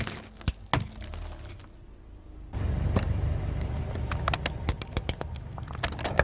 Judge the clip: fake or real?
real